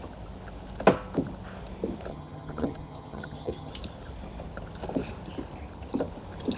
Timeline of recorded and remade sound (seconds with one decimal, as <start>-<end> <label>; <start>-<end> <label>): 0.0-2.1 recorded; 2.1-3.7 remade; 3.7-6.6 recorded